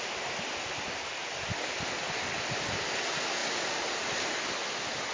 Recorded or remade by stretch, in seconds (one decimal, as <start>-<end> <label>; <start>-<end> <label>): 0.0-5.1 recorded